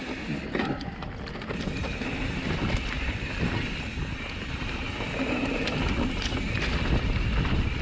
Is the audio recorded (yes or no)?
yes